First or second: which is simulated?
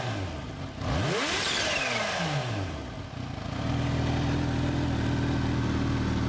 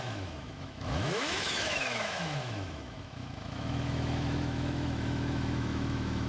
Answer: second